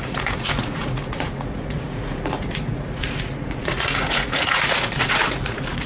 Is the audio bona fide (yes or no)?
no